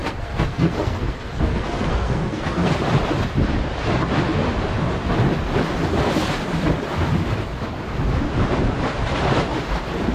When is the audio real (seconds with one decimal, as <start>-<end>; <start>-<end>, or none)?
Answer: 2.7-10.1